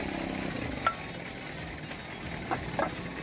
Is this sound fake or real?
real